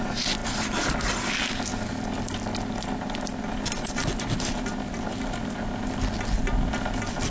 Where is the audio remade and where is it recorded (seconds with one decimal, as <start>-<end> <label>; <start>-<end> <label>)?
0.0-7.3 recorded